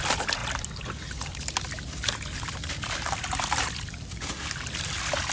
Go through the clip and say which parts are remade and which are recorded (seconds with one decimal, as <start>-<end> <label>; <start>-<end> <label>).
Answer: 0.0-5.3 recorded

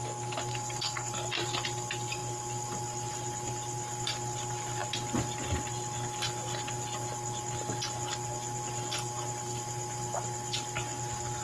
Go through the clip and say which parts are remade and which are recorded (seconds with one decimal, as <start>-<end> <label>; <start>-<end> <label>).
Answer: 0.0-0.5 recorded; 0.5-1.1 remade; 1.1-11.4 recorded

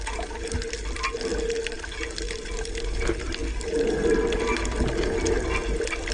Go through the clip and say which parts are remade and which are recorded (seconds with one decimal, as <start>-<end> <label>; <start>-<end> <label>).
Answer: 0.0-6.1 recorded

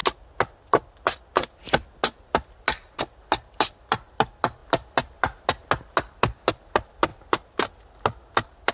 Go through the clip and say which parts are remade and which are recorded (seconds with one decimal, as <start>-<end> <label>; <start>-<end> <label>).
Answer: 0.0-8.7 recorded

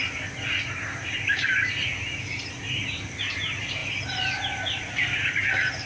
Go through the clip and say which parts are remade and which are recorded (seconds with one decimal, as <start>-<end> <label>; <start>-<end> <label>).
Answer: 0.0-5.9 recorded

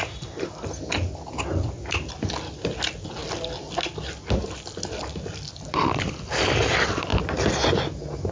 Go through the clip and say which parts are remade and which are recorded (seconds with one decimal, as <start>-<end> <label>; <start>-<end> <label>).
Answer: 0.0-8.3 recorded

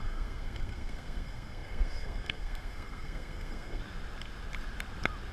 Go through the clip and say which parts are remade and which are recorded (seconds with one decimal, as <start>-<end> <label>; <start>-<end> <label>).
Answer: 0.0-3.8 remade; 3.8-5.3 recorded